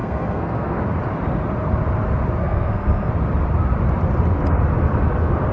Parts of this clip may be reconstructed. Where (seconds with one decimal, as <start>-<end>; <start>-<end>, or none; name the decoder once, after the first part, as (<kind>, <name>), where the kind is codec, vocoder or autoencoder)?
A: 0.0-0.8 (codec, SNAC); 2.4-3.1